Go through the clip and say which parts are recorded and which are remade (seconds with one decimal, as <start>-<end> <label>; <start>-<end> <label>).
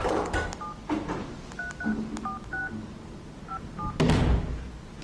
0.0-5.0 recorded